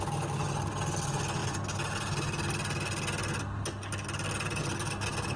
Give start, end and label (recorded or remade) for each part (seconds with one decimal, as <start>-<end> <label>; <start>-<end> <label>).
0.0-5.4 recorded